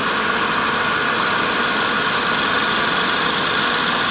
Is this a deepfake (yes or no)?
no